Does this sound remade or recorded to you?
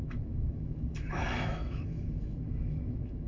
remade